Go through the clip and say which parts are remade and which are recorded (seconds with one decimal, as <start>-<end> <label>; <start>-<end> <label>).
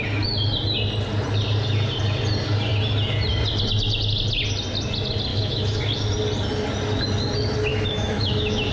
0.0-5.3 recorded; 5.3-5.8 remade; 5.8-7.7 recorded; 7.7-8.7 remade